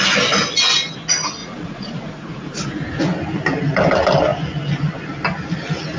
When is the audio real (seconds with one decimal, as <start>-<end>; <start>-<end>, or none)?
0.0-1.4; 3.0-6.0